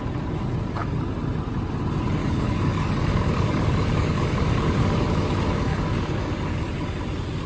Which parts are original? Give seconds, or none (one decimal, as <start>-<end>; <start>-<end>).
0.0-2.2; 6.7-7.5